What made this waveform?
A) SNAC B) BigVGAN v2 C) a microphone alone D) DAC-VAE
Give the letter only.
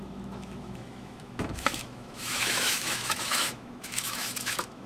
D